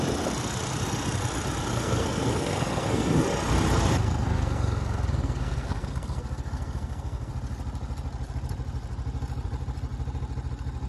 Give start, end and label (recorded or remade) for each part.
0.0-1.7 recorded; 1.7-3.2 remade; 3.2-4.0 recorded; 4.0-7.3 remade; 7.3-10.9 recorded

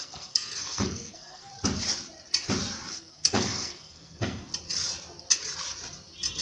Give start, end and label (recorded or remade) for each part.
0.0-1.5 remade; 1.5-2.9 recorded; 2.9-4.5 remade; 4.5-6.4 recorded